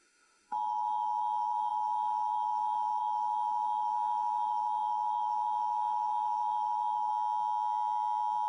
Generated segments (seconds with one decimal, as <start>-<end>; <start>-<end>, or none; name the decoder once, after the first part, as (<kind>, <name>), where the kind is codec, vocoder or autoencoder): 0.0-7.1 (autoencoder, DAC-VAE)